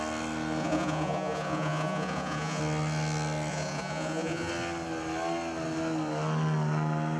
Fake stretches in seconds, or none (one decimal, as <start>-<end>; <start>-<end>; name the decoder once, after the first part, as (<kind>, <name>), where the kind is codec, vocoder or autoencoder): 0.6-2.6 (vocoder, Vocos); 3.5-4.5